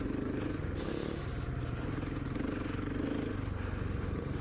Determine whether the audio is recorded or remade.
recorded